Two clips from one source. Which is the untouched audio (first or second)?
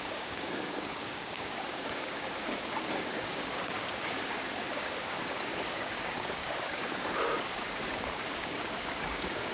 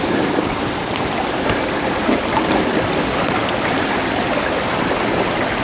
second